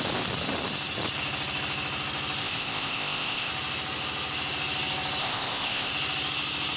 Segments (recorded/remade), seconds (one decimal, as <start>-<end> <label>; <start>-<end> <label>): 0.0-2.4 recorded; 2.4-3.5 remade; 3.5-5.2 recorded; 5.2-5.9 remade; 5.9-6.8 recorded

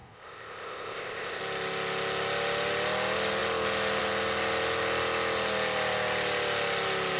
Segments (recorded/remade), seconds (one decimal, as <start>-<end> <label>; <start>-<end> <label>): 0.0-1.4 remade; 1.4-7.2 recorded

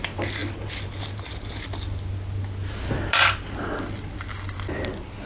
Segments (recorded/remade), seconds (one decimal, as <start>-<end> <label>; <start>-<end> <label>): 0.0-5.3 recorded

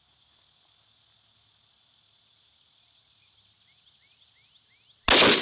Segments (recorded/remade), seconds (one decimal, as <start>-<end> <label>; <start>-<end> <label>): 0.0-5.4 recorded

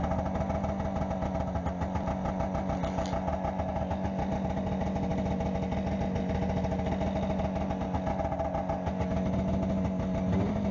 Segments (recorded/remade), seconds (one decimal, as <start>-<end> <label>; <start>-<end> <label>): 0.0-10.7 recorded